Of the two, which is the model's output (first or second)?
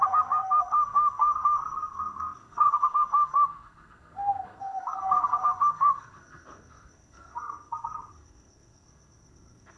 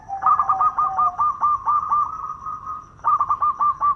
first